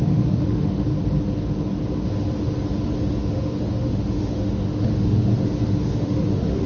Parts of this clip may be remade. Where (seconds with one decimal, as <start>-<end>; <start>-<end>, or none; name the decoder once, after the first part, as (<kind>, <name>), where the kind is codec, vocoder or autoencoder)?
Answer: 0.0-0.9 (autoencoder, DAC-VAE); 3.2-5.3; 5.8-6.7